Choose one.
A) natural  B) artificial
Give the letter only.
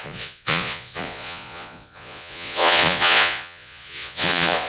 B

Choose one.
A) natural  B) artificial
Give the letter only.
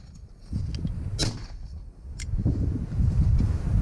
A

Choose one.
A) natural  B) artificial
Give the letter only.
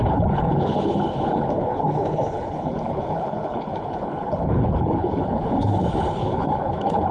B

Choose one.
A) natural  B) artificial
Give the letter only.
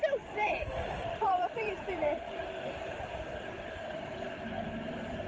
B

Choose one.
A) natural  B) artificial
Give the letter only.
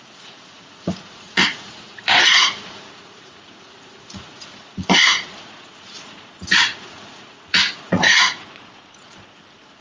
B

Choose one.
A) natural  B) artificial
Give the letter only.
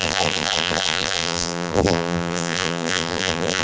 B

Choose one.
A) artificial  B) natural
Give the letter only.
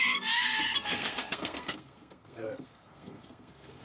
A